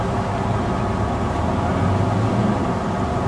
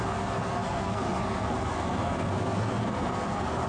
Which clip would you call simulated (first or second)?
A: second